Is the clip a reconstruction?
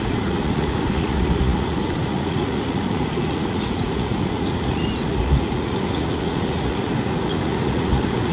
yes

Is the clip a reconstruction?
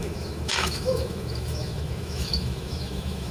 yes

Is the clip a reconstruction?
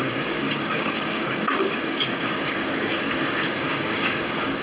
yes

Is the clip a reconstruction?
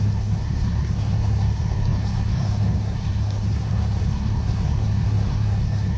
yes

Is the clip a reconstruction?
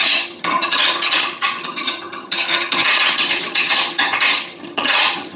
yes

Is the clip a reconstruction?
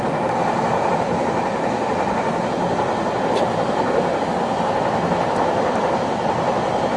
no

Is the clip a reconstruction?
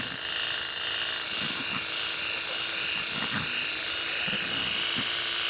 no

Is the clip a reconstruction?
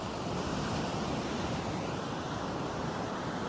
no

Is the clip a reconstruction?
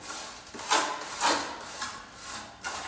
no